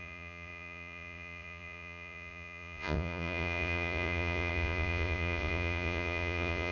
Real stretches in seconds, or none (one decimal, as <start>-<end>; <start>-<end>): none